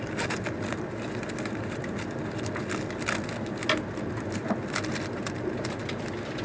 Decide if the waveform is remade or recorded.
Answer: recorded